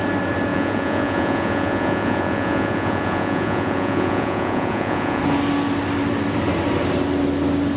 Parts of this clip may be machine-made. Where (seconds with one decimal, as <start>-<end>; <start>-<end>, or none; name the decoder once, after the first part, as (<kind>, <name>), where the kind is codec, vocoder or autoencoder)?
0.5-5.2 (vocoder, Vocos)